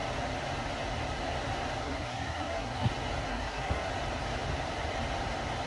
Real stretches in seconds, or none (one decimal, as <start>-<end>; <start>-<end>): 0.0-1.8; 2.9-3.3; 3.9-5.7